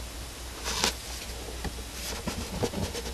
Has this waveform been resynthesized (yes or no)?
no